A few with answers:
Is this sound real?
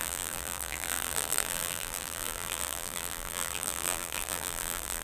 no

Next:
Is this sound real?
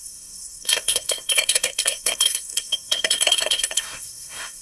no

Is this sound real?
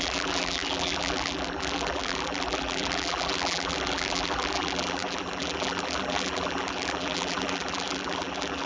no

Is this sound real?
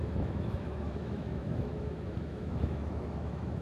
no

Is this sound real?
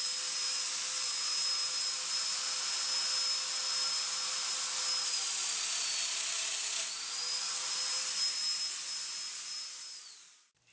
yes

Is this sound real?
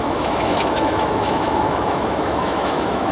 no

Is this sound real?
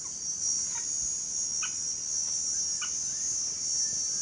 yes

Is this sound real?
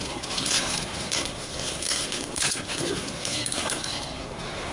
no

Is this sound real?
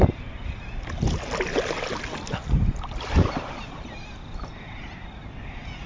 yes